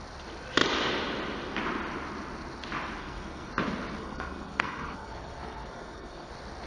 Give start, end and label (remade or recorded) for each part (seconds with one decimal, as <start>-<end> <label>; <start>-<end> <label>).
0.0-3.0 recorded; 3.0-3.5 remade; 3.5-4.0 recorded; 4.0-6.3 remade; 6.3-6.7 recorded